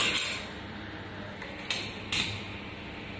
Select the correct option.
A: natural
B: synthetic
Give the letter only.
A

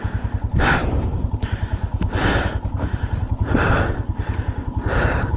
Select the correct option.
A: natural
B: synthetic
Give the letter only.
B